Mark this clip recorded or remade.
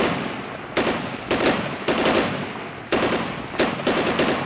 recorded